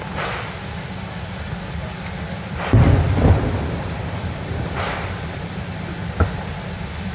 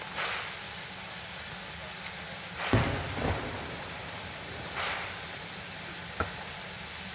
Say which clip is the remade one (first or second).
first